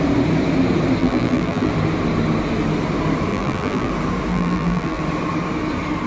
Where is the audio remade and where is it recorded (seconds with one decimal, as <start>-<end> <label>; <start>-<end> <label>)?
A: 0.0-1.0 recorded; 1.0-1.7 remade; 1.7-3.3 recorded; 3.3-3.9 remade; 3.9-4.3 recorded; 4.3-5.0 remade; 5.0-6.1 recorded